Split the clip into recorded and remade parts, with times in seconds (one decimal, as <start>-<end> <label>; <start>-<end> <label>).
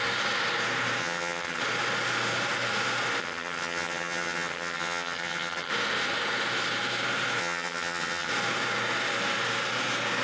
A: 0.0-1.0 recorded; 1.0-1.6 remade; 1.6-3.2 recorded; 3.2-5.7 remade; 5.7-7.4 recorded; 7.4-8.3 remade; 8.3-10.2 recorded